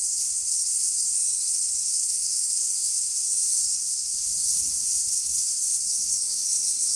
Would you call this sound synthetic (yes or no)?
yes